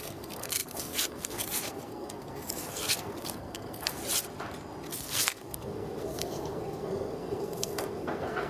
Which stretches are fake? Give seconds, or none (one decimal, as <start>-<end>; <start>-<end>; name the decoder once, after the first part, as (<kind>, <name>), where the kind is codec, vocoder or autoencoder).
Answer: 0.0-4.0 (codec, SNAC); 4.9-8.5